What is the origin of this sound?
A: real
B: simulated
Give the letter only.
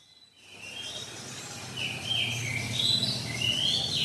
A